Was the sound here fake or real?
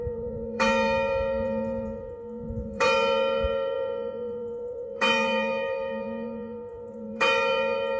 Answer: fake